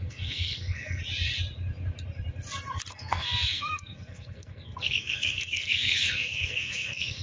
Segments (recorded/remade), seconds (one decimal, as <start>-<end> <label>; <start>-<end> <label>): 0.0-1.0 remade; 1.0-2.9 recorded; 2.9-7.2 remade